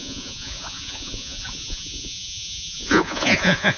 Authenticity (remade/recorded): remade